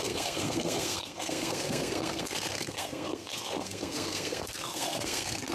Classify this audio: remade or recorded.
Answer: remade